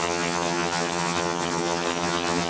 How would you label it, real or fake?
fake